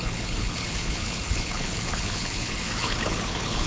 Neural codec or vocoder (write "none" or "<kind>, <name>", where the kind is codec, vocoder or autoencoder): codec, HILCodec